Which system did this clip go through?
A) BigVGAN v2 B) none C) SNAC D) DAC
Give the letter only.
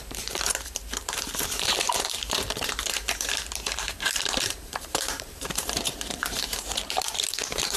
A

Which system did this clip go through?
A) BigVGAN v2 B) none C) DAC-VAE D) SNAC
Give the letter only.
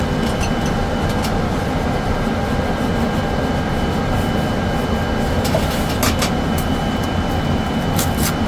B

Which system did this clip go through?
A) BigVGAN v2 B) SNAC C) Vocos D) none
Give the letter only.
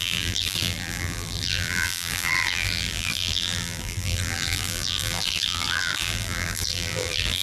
A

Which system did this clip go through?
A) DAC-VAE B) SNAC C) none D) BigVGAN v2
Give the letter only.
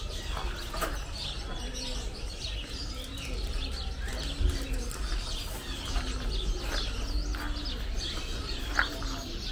C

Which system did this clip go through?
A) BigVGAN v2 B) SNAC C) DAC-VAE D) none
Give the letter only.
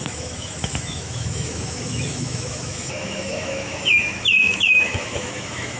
C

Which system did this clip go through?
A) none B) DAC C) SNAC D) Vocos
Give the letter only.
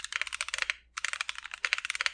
A